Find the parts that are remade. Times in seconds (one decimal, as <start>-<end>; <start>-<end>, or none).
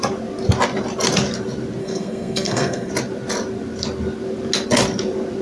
1.8-2.9